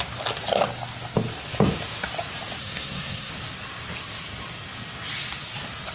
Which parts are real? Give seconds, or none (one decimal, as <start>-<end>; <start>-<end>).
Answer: 0.0-2.6; 3.3-5.9